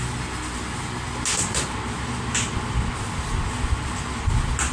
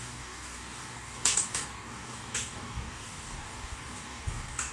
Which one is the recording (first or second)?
first